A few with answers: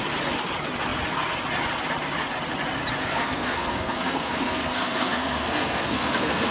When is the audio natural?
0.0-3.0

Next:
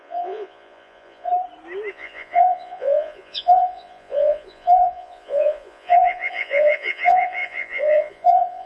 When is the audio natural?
1.3-1.9